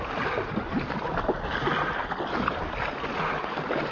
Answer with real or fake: real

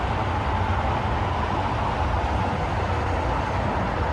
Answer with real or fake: real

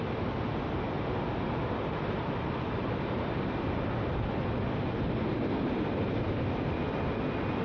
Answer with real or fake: real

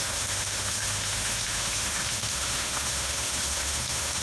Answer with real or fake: fake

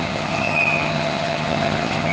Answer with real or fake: fake